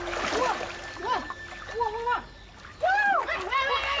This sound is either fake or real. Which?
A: real